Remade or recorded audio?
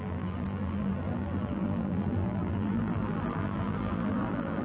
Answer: remade